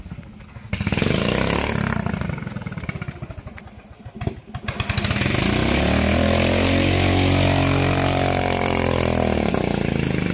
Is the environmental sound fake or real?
real